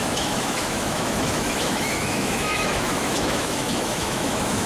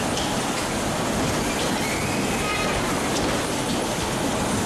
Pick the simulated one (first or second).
first